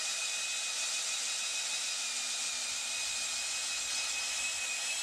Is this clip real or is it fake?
real